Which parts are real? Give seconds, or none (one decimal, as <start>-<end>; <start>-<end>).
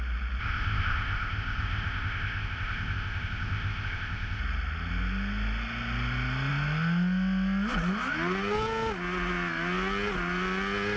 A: 0.0-0.4; 4.4-11.0